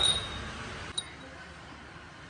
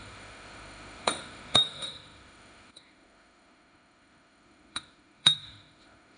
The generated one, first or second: second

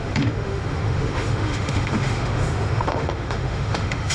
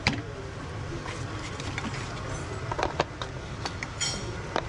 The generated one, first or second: first